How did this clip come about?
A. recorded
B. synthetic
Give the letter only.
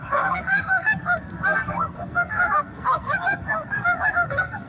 B